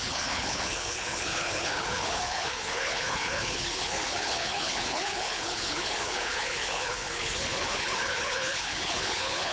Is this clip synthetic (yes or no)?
yes